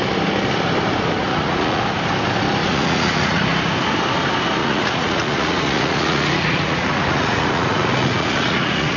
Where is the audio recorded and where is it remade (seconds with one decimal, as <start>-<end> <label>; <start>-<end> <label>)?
0.0-1.3 recorded; 1.3-1.8 remade; 1.8-2.6 recorded; 2.6-3.4 remade; 3.4-4.6 recorded; 4.6-9.0 remade